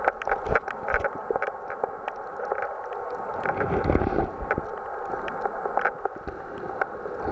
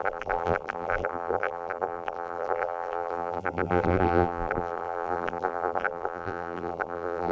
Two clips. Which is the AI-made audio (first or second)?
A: second